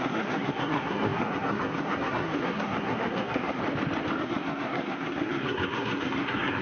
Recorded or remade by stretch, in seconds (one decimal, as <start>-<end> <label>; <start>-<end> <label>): 0.0-3.6 remade; 3.6-4.2 recorded; 4.2-6.6 remade